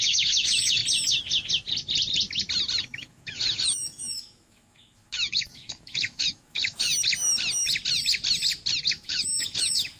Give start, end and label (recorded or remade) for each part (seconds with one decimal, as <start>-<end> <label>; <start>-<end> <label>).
0.0-0.8 remade; 0.8-2.8 recorded; 2.8-6.9 remade; 6.9-8.9 recorded; 8.9-10.0 remade